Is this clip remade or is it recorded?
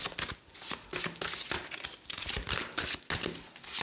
recorded